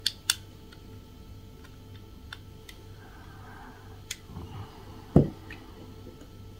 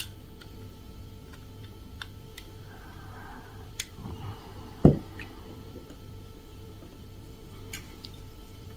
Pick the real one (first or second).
first